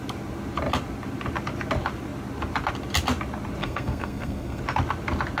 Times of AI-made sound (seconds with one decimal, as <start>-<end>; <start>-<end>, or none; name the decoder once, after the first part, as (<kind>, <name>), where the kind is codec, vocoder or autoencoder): 3.6-4.6 (codec, SNAC)